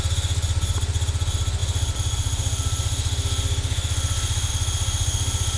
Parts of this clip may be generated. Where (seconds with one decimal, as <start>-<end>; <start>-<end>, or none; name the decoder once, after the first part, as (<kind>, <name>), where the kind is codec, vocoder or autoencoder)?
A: none